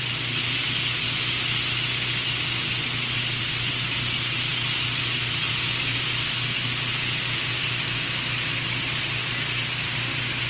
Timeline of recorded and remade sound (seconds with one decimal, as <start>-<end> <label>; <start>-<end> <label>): 0.0-10.5 recorded